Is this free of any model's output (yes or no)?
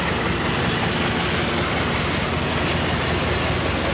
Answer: yes